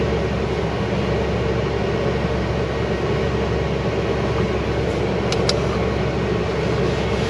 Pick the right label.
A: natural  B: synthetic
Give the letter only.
A